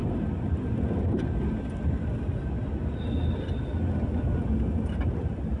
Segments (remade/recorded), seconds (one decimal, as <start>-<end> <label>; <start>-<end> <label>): 0.0-5.6 recorded